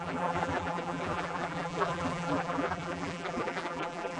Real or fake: fake